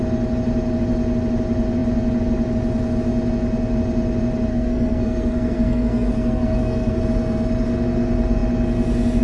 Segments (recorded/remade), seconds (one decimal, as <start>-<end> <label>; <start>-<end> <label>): 0.0-4.5 recorded; 4.5-7.0 remade; 7.0-9.2 recorded